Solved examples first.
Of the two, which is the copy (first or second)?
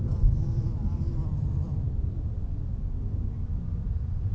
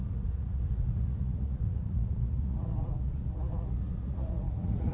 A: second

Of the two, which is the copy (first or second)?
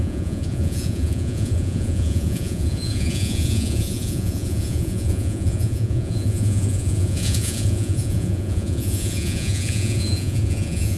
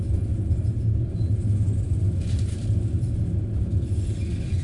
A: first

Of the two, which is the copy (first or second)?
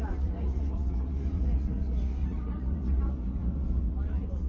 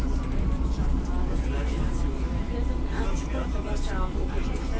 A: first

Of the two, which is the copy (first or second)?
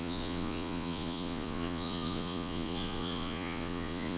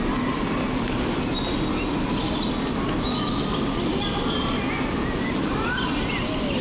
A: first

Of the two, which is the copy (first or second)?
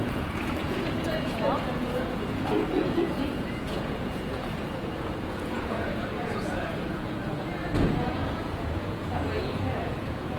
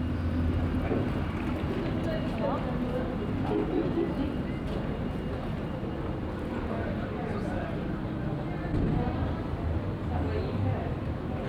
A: first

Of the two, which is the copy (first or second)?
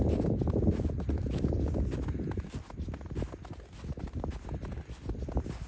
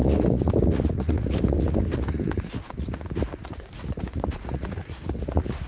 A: second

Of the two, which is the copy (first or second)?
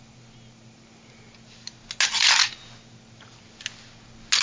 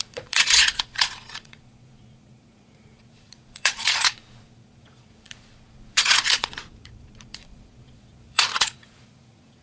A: second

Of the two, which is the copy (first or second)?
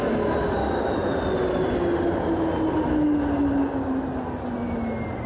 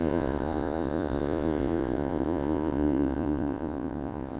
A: second